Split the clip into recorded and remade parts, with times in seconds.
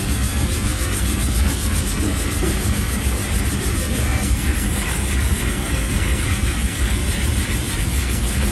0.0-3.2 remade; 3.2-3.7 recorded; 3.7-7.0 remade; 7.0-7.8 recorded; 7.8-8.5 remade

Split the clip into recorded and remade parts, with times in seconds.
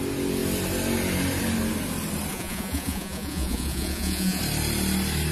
0.0-2.3 recorded; 2.3-4.4 remade; 4.4-5.3 recorded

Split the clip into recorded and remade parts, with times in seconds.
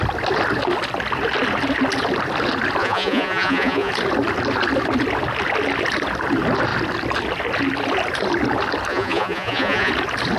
0.0-2.8 recorded; 2.8-3.9 remade; 3.9-8.9 recorded; 8.9-9.9 remade; 9.9-10.4 recorded